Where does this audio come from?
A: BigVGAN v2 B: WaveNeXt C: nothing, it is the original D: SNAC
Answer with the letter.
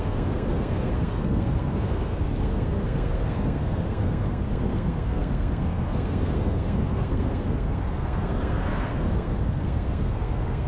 D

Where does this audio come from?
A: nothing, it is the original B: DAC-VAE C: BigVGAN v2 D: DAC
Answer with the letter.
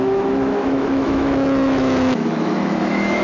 B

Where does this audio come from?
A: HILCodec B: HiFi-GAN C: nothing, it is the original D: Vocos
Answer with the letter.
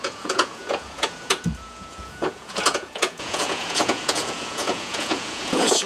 D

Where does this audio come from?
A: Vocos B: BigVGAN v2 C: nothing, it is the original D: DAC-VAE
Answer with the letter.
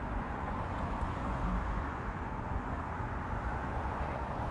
A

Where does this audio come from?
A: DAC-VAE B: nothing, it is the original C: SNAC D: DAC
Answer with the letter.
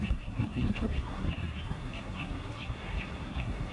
C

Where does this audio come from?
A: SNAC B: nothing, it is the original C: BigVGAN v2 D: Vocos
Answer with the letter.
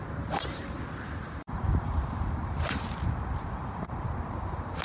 C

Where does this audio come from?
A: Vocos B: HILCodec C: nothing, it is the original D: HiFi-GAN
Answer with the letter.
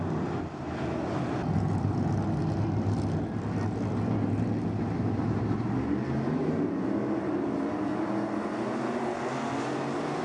C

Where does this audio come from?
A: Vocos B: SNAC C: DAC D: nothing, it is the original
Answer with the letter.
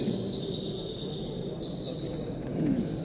D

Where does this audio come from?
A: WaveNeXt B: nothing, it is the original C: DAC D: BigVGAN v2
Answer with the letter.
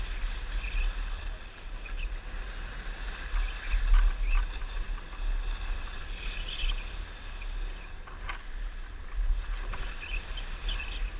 B